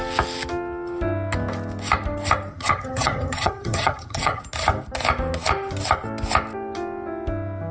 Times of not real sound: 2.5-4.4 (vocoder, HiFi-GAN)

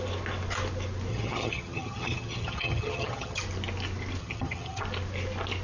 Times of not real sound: 1.1-3.4 (vocoder, HiFi-GAN); 4.2-4.8

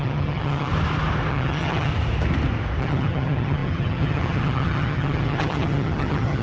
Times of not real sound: 0.0-0.7 (vocoder, HiFi-GAN); 1.3-1.9; 2.8-6.4

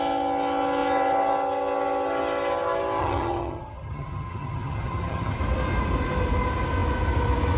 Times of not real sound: 3.0-5.4 (vocoder, HiFi-GAN)